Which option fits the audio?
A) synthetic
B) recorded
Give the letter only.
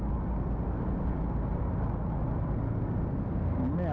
B